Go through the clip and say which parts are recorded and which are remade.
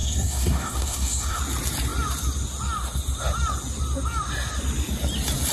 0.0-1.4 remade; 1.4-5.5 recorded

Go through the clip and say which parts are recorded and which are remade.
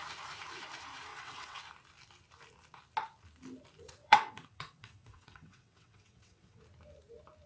0.0-1.1 recorded; 1.1-1.6 remade; 1.6-4.0 recorded; 4.0-6.6 remade; 6.6-7.5 recorded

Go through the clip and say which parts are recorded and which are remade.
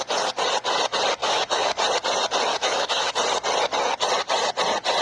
0.0-1.2 recorded; 1.2-1.8 remade; 1.8-2.5 recorded; 2.5-3.1 remade; 3.1-5.0 recorded